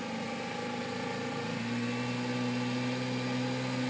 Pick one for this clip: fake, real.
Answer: real